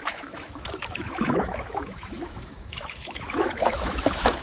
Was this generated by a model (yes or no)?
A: yes